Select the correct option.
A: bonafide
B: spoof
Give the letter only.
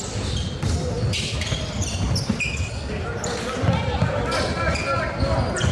A